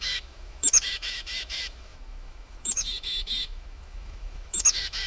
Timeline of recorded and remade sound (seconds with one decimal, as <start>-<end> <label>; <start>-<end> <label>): 0.0-5.1 remade